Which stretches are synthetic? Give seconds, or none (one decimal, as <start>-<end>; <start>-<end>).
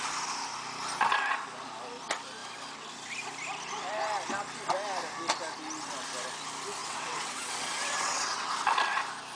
6.8-8.5